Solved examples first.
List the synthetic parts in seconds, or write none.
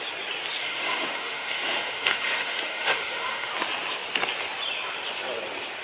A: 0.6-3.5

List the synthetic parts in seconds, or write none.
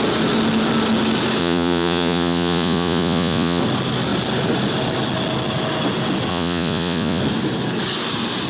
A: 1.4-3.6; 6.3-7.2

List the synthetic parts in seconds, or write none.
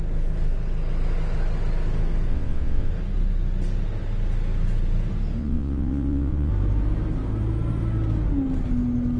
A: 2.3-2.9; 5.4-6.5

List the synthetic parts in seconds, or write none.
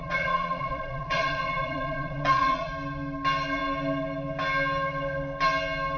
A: 0.0-2.7